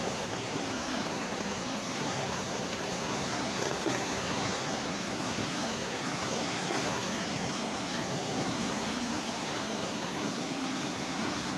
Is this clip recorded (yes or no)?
no